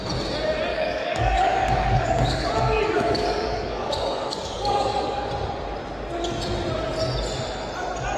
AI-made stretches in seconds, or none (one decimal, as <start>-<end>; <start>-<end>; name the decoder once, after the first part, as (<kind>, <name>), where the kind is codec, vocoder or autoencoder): 0.7-5.3 (codec, DAC)